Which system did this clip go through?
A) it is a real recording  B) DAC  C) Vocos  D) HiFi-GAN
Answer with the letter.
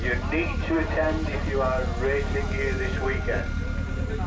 A